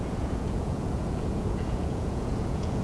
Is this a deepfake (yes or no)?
yes